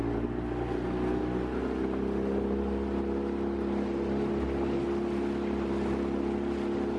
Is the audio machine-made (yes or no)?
no